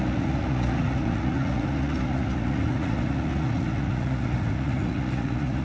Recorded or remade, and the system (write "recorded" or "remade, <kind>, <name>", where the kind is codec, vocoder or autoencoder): remade, vocoder, Vocos